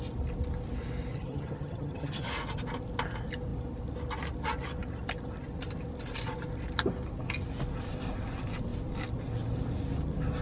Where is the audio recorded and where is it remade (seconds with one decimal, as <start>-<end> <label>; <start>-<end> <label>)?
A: 0.0-1.1 recorded; 1.1-2.3 remade; 2.3-10.4 recorded